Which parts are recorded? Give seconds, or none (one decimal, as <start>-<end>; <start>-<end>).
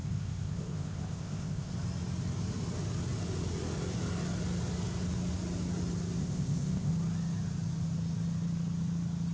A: 1.7-6.2; 6.9-9.3